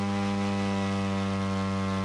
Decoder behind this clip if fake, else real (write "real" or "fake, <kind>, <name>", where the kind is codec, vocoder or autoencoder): real